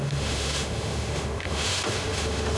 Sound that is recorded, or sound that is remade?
remade